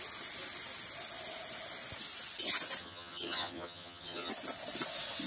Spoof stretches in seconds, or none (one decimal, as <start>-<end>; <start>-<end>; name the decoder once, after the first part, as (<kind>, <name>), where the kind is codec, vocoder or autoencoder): 2.8-4.3 (vocoder, HiFi-GAN)